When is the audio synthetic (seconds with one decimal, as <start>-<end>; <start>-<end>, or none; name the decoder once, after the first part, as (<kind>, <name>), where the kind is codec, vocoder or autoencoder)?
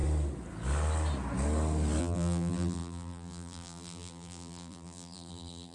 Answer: 2.0-5.7 (vocoder, BigVGAN v2)